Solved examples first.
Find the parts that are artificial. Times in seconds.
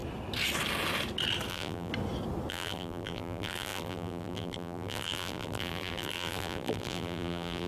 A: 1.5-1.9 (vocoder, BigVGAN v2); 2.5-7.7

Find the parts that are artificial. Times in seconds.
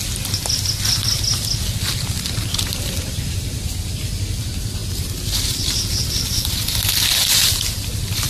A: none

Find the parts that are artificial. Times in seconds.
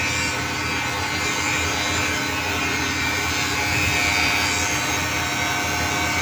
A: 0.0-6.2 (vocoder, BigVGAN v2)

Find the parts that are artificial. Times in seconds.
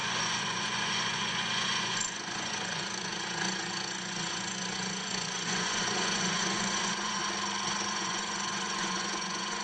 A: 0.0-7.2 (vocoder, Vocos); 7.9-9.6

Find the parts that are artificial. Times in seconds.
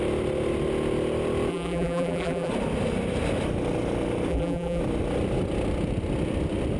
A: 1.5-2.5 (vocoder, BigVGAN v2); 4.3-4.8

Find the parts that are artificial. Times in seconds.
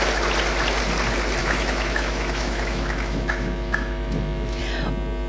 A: 1.4-4.6 (autoencoder, DAC-VAE)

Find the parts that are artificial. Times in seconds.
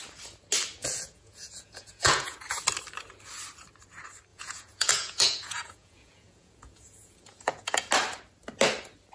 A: 0.8-2.4 (vocoder, Vocos); 4.3-7.9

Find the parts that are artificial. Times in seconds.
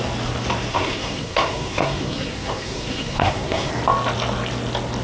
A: 0.7-3.7 (codec, SNAC)